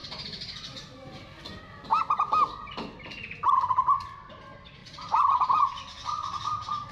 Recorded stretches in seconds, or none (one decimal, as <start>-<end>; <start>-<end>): 0.5-4.8; 5.8-6.9